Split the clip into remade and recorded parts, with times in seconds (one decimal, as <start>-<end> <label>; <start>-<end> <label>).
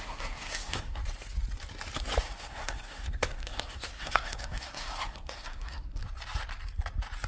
0.0-1.0 remade; 1.0-2.2 recorded; 2.2-6.0 remade; 6.0-7.3 recorded